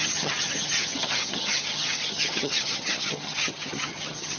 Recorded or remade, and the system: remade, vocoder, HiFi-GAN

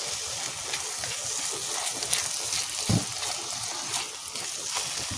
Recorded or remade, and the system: recorded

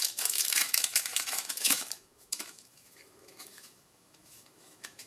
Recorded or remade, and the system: remade, autoencoder, DAC-VAE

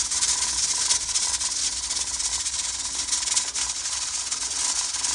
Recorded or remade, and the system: recorded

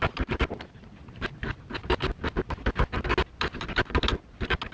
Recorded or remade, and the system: recorded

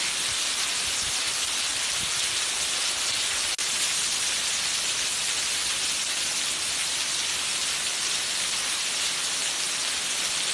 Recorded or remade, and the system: recorded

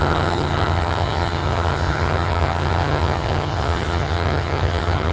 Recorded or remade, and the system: remade, vocoder, HiFi-GAN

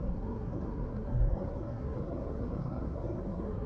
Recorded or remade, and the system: remade, codec, SNAC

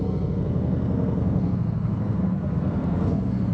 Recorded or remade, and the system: remade, codec, SNAC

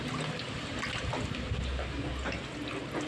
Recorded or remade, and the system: recorded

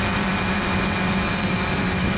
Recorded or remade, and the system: recorded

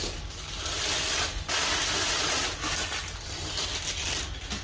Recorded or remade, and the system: recorded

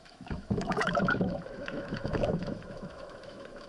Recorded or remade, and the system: remade, autoencoder, DAC-VAE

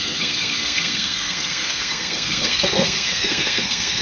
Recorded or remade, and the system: remade, codec, SNAC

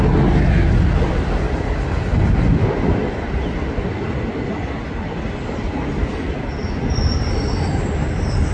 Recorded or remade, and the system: recorded